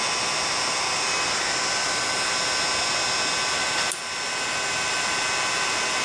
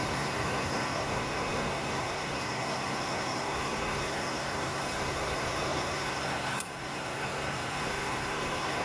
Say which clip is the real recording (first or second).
first